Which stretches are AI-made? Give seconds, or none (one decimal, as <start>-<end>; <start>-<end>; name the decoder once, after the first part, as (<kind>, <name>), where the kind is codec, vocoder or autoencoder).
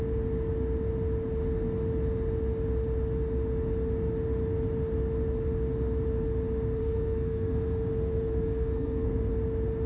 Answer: 6.8-9.3 (codec, SNAC)